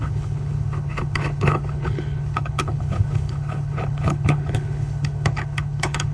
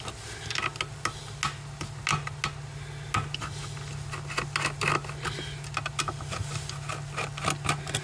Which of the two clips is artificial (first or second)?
first